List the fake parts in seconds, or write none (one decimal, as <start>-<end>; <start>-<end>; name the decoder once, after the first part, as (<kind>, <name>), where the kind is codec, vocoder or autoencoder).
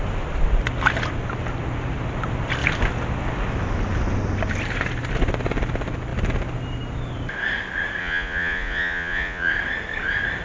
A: 8.0-9.5 (vocoder, Vocos)